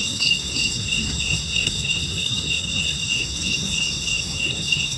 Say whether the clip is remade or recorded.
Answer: remade